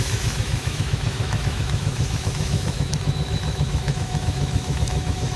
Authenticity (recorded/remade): remade